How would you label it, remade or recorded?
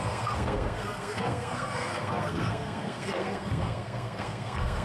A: remade